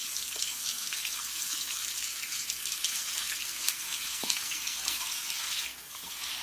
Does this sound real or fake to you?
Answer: fake